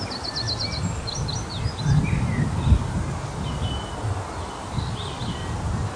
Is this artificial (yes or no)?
no